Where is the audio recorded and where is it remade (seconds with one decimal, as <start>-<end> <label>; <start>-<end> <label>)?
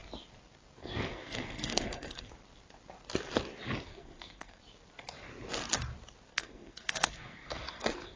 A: 0.0-0.8 recorded; 0.8-2.3 remade; 2.3-3.9 recorded; 3.9-4.6 remade; 4.6-6.3 recorded; 6.3-8.2 remade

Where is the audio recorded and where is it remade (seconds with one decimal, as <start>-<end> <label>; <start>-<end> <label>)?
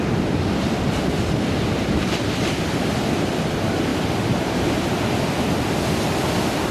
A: 0.0-3.9 recorded; 3.9-5.3 remade; 5.3-6.7 recorded